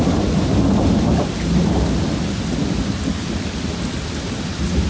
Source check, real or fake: real